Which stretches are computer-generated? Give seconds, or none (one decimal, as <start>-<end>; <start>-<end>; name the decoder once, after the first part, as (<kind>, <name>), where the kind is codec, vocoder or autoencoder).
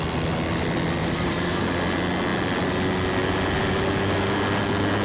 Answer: 1.0-1.6 (vocoder, BigVGAN v2)